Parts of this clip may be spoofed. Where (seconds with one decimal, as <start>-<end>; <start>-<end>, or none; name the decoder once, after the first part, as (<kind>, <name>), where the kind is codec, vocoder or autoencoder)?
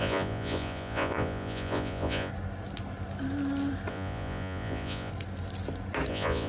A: 0.0-2.3 (vocoder, Vocos); 3.9-5.1; 6.1-6.5